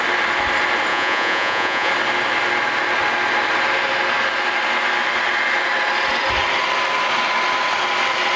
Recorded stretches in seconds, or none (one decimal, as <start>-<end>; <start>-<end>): 0.0-0.9; 1.9-8.4

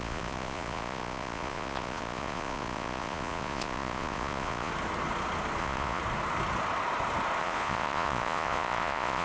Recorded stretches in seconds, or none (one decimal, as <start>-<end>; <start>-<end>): 4.7-5.6; 6.0-7.4

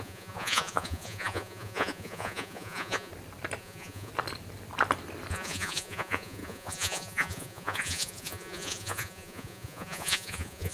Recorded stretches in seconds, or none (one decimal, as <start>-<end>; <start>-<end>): 3.1-3.6; 4.1-5.3

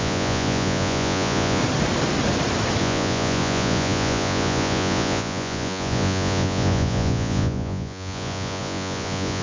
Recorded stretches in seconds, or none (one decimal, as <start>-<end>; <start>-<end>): 1.6-2.8